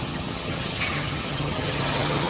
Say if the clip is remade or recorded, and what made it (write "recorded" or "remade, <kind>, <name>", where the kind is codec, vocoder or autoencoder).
remade, vocoder, HiFi-GAN